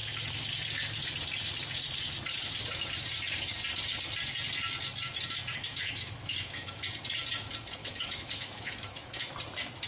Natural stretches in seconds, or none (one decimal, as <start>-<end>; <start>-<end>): 0.0-5.5; 6.8-7.8; 9.3-9.9